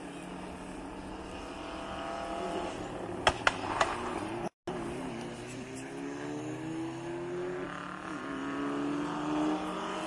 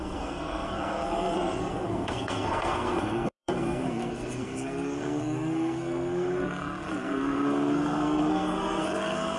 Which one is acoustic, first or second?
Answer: first